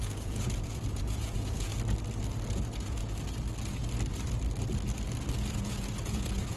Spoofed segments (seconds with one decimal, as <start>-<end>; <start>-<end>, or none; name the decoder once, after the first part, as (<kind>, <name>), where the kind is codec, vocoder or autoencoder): 0.0-1.7 (vocoder, Vocos); 2.5-3.0; 5.5-6.6